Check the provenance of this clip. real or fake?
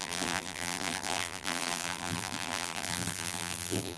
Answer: fake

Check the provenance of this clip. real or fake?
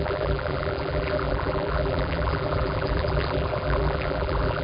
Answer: fake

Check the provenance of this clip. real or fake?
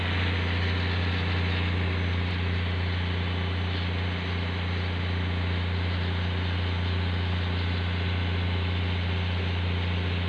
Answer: real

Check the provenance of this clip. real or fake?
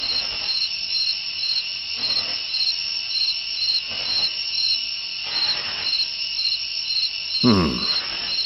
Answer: real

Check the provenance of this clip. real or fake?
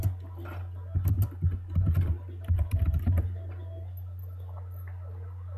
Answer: real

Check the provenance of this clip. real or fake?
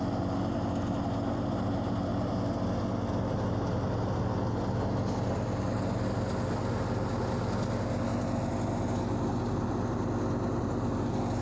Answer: real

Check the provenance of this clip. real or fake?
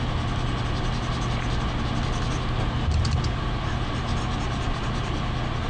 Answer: real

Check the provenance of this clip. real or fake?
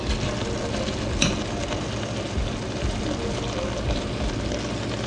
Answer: real